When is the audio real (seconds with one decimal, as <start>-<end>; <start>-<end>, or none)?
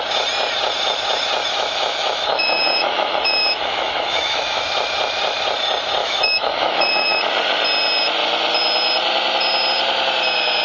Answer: 0.0-1.5; 4.6-6.0; 7.2-10.6